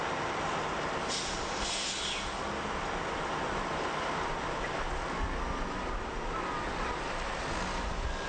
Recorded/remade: recorded